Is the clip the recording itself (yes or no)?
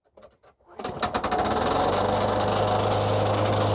yes